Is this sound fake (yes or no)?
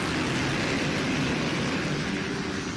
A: no